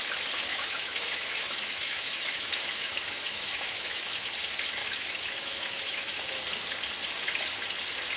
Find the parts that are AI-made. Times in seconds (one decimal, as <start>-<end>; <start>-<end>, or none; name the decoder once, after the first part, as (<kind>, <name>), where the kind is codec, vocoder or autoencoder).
0.5-4.3 (autoencoder, DAC-VAE); 4.8-6.2